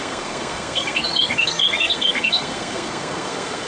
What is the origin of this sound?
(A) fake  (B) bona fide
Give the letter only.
A